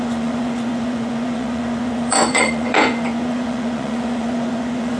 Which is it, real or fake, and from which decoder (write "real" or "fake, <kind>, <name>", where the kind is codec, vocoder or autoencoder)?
fake, vocoder, Vocos